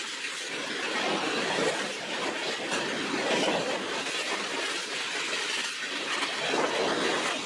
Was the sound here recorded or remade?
recorded